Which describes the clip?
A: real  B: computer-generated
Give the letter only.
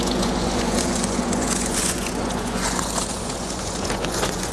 B